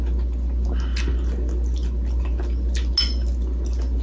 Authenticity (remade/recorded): recorded